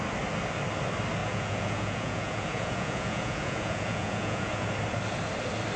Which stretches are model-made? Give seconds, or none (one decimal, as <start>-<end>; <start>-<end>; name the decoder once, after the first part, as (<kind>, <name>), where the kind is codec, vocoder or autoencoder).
1.2-4.7 (vocoder, Vocos)

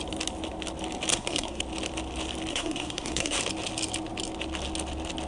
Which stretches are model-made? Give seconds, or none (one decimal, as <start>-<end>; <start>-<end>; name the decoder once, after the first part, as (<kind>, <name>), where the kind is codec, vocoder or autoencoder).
1.1-1.6 (codec, SNAC); 2.5-3.4

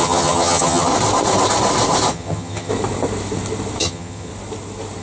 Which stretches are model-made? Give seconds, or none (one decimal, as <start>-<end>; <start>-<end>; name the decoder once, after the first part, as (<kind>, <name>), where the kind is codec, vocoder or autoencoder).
0.0-0.9 (vocoder, HiFi-GAN); 2.1-2.7; 3.8-4.3

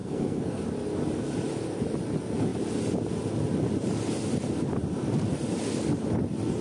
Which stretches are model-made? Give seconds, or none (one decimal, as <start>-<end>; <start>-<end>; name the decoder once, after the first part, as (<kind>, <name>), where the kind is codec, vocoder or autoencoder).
0.0-0.6 (codec, SNAC)

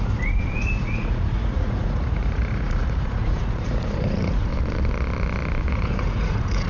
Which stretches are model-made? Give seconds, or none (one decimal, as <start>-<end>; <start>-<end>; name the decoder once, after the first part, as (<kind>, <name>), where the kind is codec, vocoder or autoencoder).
0.0-4.5 (vocoder, Vocos); 5.7-6.7

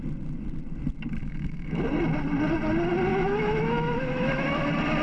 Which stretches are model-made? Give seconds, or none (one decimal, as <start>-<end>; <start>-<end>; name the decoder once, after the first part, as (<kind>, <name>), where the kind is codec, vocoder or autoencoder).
1.2-1.8 (autoencoder, DAC-VAE); 3.1-4.6

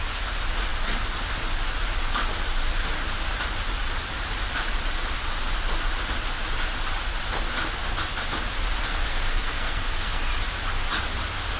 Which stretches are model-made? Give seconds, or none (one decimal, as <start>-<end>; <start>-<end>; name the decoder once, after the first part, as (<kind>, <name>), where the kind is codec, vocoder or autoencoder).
8.9-10.3 (codec, SNAC)

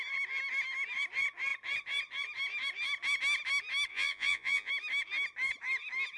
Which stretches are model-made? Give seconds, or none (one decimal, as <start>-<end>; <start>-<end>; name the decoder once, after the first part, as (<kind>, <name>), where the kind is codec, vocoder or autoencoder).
3.9-4.7 (vocoder, Vocos)